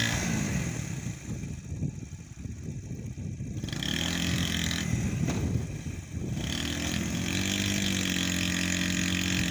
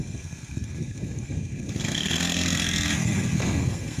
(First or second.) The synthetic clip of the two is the second